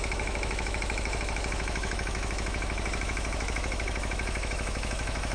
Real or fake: fake